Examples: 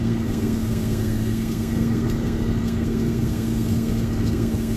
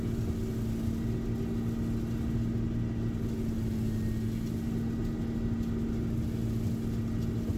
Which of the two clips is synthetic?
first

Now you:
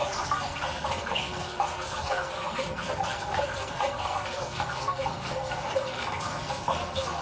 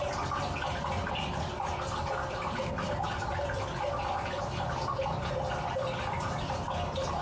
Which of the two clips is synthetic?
first